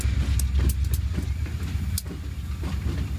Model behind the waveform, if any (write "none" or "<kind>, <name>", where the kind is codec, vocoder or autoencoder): none